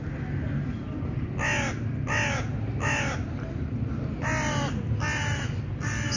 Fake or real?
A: real